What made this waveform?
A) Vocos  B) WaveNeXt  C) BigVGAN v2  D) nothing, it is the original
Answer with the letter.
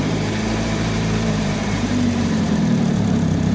C